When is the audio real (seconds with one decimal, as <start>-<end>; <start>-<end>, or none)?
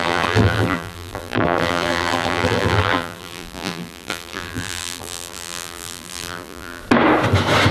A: 6.8-7.7